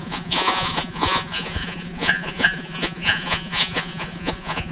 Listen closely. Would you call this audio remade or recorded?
remade